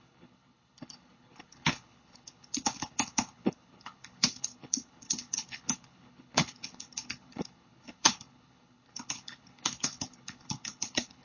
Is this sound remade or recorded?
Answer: remade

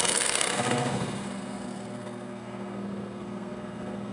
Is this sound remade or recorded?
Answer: remade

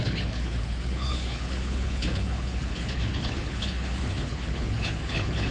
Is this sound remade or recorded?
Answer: remade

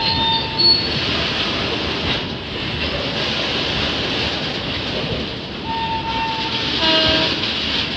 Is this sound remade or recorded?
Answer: recorded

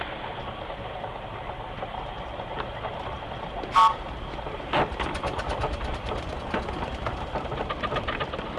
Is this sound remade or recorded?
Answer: recorded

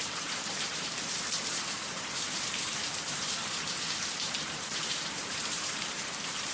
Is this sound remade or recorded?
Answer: remade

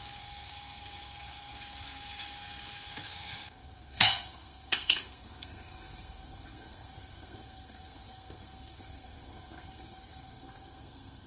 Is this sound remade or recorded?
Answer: remade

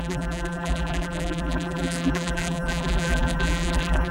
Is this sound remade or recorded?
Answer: remade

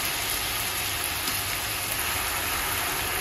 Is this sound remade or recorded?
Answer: recorded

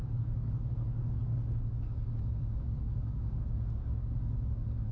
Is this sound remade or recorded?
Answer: remade